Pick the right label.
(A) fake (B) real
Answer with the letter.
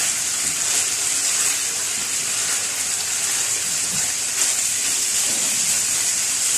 B